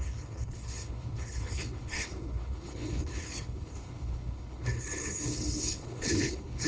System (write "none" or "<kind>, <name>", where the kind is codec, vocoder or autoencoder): codec, HILCodec